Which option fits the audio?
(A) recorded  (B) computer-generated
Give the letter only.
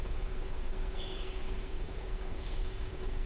B